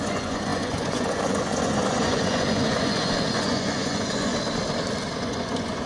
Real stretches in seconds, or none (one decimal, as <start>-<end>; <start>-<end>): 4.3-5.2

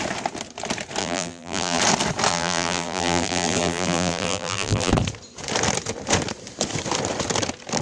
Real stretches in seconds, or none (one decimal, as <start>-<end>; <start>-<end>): 0.0-1.0; 1.8-2.3; 4.9-7.8

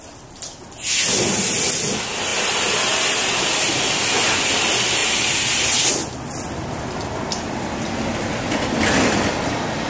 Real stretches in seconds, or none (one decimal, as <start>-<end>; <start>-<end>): 0.0-2.3; 3.2-9.9

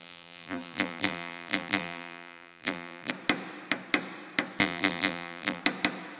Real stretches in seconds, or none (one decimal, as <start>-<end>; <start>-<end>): 3.1-4.6; 5.6-6.2